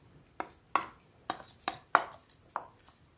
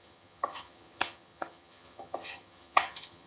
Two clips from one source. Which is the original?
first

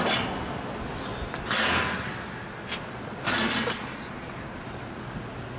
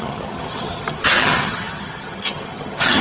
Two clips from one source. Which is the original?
first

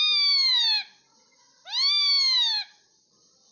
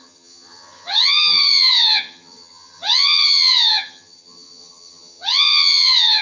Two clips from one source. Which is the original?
first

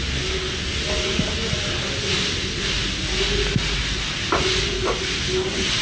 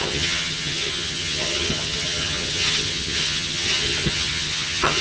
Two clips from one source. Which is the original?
first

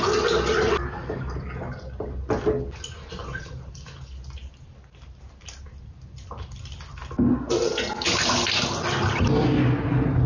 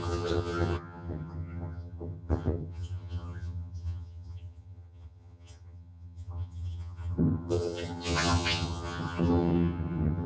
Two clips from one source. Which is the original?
first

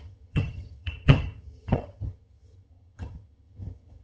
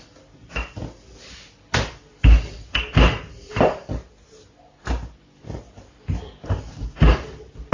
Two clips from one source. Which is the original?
second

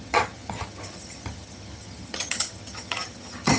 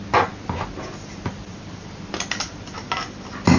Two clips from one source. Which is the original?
second